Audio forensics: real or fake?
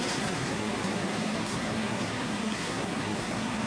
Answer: fake